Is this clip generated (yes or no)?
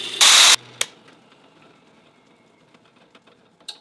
no